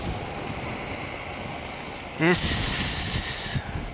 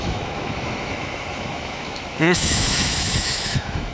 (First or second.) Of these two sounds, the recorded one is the first